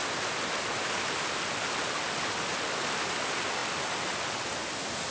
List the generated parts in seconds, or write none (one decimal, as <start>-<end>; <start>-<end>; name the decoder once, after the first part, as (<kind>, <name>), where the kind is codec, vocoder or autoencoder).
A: none

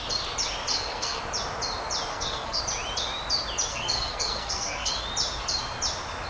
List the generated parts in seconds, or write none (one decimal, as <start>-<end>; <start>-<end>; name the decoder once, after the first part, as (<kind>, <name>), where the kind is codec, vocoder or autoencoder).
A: 0.7-1.2 (codec, SNAC); 2.1-2.6; 3.7-4.9

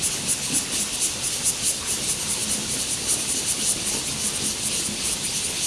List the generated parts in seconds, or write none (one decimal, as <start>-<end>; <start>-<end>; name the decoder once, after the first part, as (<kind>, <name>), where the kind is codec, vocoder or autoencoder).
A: 2.4-3.8 (vocoder, BigVGAN v2)

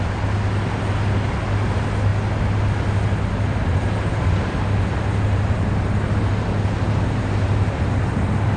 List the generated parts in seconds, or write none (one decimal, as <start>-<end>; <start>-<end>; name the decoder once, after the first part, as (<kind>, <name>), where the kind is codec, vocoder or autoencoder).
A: none

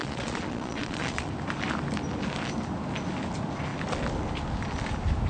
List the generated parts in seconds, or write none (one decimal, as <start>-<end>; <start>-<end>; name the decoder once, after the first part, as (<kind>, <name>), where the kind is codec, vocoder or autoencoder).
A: 0.0-1.3 (vocoder, Vocos)

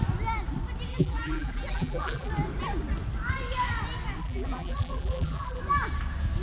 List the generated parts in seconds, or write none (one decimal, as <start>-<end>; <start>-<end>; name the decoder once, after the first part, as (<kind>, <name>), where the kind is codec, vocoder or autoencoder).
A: 0.9-2.3 (vocoder, BigVGAN v2); 4.2-5.6

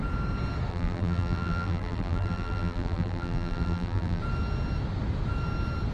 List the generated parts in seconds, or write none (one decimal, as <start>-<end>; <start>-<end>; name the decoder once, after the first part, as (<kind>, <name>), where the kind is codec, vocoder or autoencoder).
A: 0.7-4.2 (vocoder, BigVGAN v2)